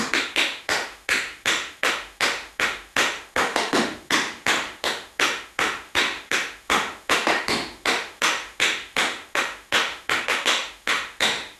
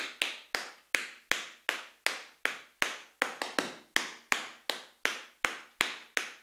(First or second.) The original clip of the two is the second